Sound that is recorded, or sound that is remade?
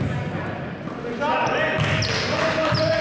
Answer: recorded